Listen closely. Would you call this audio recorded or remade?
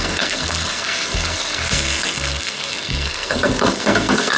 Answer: remade